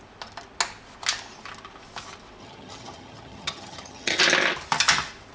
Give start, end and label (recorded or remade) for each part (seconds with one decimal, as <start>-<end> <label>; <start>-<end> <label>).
0.0-2.4 recorded; 2.4-4.2 remade; 4.2-5.3 recorded